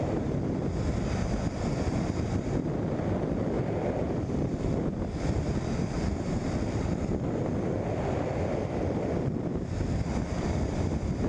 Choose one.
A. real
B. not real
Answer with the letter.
B